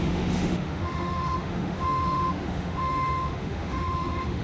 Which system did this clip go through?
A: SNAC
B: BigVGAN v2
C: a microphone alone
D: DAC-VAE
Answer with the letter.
D